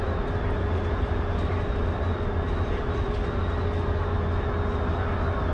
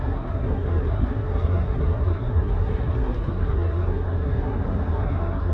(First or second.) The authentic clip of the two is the first